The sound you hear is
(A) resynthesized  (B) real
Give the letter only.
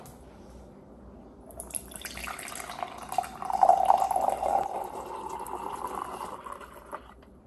B